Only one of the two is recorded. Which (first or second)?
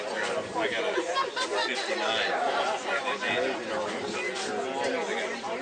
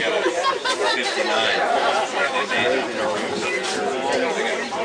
first